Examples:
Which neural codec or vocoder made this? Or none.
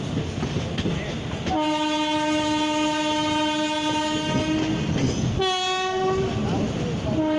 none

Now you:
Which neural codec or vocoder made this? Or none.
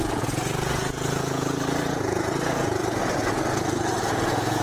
vocoder, Vocos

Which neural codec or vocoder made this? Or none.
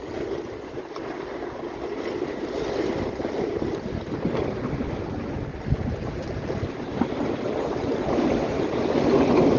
none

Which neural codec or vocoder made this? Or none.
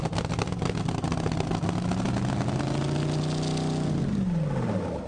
none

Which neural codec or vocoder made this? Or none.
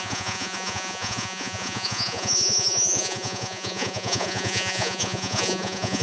vocoder, Vocos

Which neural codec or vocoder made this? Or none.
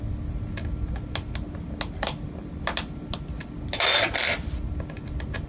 none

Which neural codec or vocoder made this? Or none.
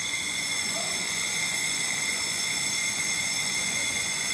vocoder, Vocos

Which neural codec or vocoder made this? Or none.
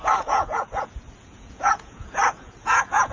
vocoder, Vocos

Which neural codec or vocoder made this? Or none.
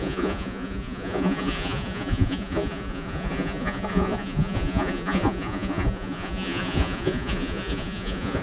vocoder, Vocos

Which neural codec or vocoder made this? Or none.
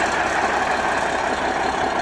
none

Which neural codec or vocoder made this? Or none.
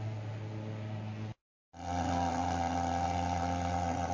none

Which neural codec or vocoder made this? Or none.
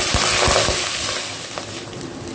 none